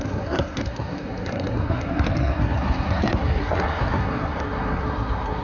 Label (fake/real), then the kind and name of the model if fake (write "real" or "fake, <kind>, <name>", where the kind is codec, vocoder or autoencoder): fake, codec, SNAC